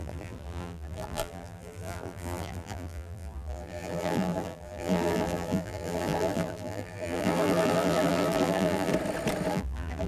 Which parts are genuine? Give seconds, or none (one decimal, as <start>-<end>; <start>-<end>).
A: 8.9-9.5